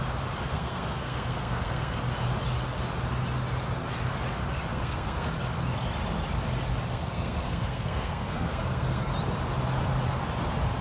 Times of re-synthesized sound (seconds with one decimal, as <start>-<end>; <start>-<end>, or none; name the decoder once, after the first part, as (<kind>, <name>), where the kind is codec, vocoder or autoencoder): 0.5-2.0 (codec, SNAC); 4.7-5.3; 6.9-9.1

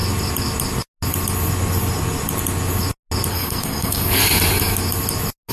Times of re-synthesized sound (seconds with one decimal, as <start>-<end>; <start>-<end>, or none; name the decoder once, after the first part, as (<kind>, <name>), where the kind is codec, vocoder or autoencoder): 3.3-4.2 (codec, SNAC)